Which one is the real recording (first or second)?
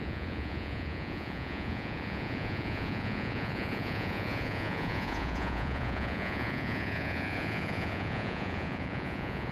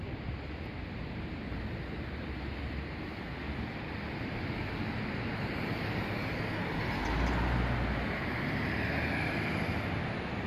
second